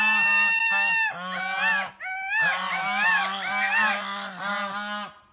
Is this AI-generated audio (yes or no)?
no